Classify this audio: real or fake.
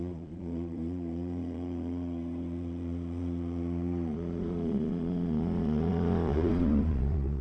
fake